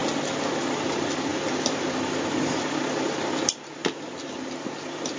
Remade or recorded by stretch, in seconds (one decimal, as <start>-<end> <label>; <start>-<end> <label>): 0.0-5.2 recorded